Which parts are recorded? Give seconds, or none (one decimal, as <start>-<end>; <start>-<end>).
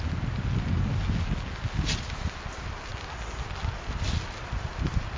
0.0-5.2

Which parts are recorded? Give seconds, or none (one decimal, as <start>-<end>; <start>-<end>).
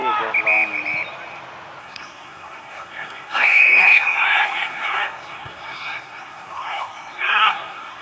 0.0-1.8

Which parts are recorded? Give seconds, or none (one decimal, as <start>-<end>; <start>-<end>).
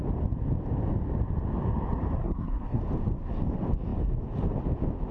0.0-2.2; 2.8-5.1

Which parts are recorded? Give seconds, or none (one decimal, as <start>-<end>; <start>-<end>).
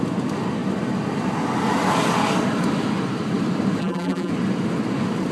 0.0-3.8; 4.3-5.3